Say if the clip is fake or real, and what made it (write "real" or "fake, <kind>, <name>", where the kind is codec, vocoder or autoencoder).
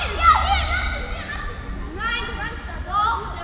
real